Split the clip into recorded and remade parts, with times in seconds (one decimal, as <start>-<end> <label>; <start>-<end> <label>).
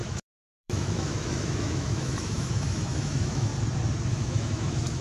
0.0-3.5 remade; 3.5-4.1 recorded; 4.1-5.0 remade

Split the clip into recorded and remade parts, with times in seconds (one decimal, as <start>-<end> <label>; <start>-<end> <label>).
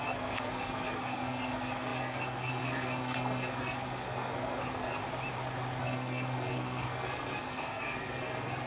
0.0-5.0 remade; 5.0-5.8 recorded; 5.8-8.7 remade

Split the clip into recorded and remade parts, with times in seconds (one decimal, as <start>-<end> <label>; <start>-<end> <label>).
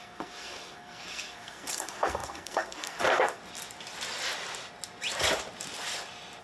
0.0-3.4 remade; 3.4-6.4 recorded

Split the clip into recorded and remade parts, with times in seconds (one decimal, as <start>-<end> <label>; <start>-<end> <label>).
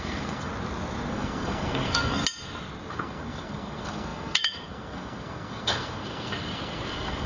0.0-0.5 remade; 0.5-1.1 recorded; 1.1-2.2 remade; 2.2-2.9 recorded; 2.9-7.3 remade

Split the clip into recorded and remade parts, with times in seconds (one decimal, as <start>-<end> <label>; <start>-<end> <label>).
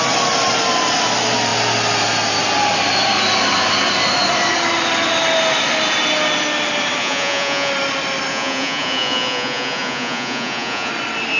0.0-7.0 recorded; 7.0-7.7 remade; 7.7-8.3 recorded; 8.3-10.9 remade; 10.9-11.4 recorded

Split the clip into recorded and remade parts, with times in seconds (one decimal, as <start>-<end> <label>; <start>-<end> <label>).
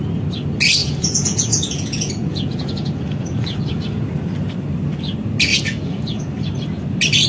0.0-0.8 recorded; 0.8-3.6 remade; 3.6-5.5 recorded; 5.5-6.4 remade; 6.4-7.3 recorded